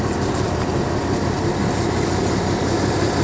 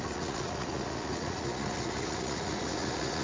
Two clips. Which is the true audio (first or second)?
first